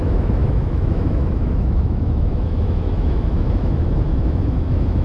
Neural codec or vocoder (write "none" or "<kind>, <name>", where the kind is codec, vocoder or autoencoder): autoencoder, DAC-VAE